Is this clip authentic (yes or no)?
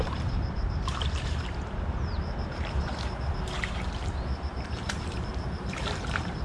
no